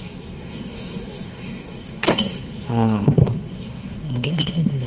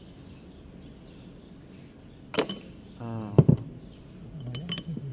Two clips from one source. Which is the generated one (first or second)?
first